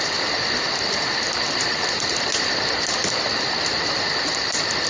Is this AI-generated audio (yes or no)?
no